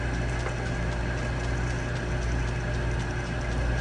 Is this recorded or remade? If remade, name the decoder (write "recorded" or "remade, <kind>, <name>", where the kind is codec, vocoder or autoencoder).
recorded